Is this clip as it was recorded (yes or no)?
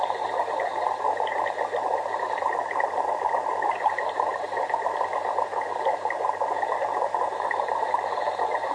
no